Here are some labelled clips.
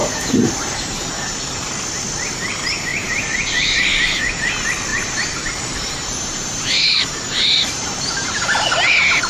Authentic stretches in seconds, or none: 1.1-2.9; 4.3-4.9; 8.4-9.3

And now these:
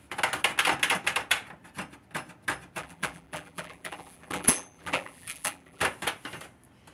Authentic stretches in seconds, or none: 0.0-2.8; 5.8-6.9

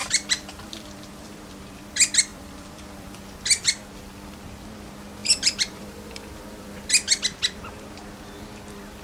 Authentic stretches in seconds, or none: 1.5-2.3; 3.2-5.2; 6.9-9.0

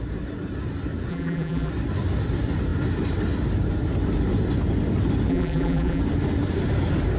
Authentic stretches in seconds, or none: 0.0-1.1; 1.7-5.3; 6.0-7.2

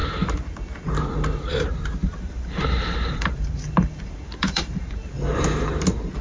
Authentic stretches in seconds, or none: 0.0-2.0; 5.1-6.2